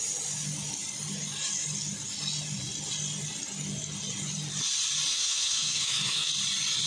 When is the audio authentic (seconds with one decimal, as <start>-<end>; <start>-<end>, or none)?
0.0-5.1; 6.3-6.9